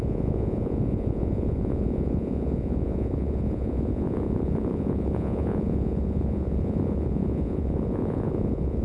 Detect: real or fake fake